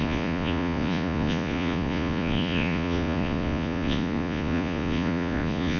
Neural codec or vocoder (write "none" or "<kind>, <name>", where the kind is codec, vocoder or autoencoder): vocoder, Vocos